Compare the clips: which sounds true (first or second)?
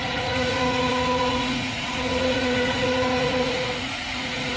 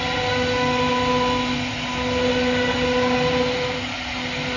second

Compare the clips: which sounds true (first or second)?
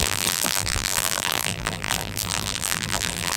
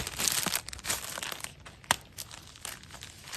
second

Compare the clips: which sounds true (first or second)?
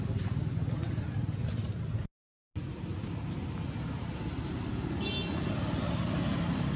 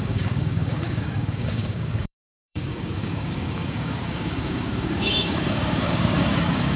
first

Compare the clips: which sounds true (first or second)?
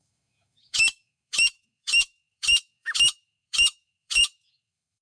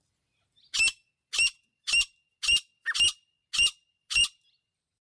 second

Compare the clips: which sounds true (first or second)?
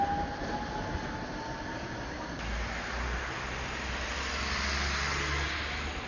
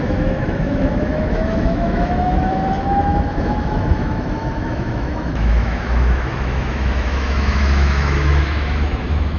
first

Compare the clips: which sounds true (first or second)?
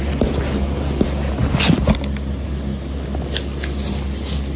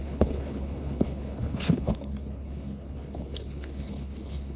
first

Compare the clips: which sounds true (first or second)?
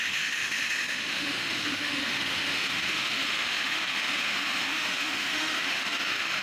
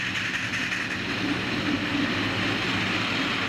second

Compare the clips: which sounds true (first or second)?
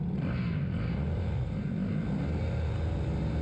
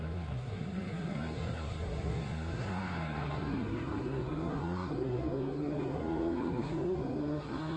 first